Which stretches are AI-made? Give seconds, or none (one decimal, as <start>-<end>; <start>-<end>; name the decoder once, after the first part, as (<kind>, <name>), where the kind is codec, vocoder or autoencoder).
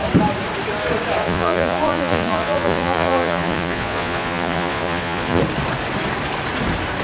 1.2-5.4 (vocoder, Vocos)